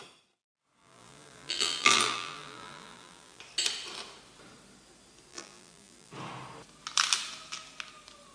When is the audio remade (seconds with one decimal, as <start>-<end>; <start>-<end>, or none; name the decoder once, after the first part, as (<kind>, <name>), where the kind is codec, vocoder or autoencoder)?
0.8-3.4 (vocoder, BigVGAN v2); 5.3-6.1